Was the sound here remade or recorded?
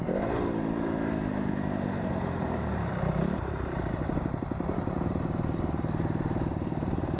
remade